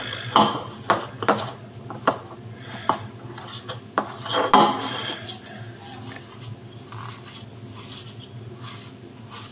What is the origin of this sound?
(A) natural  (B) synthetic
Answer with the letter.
A